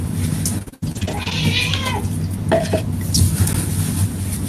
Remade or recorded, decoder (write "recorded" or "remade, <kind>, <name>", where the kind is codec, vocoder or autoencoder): recorded